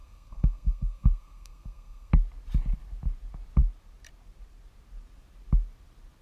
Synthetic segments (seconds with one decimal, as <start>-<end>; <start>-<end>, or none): 0.0-2.1